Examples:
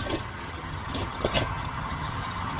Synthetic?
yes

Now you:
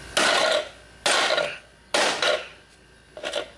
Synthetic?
no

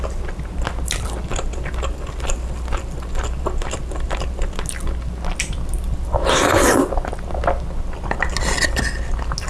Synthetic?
no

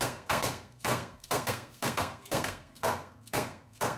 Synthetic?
yes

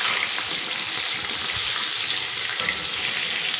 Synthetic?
no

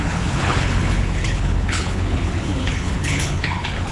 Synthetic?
yes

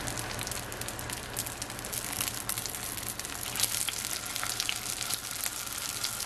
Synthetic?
no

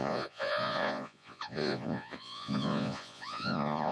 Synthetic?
yes